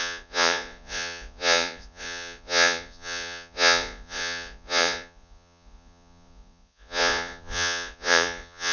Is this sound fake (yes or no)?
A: yes